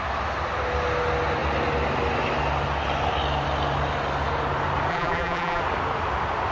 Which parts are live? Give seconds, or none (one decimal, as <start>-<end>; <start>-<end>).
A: 0.0-4.9; 5.6-6.5